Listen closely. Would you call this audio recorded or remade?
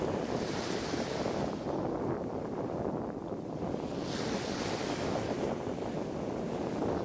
recorded